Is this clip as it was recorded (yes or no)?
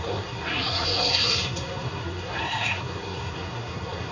no